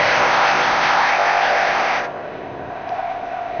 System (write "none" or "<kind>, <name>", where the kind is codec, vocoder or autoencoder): codec, ZipCodec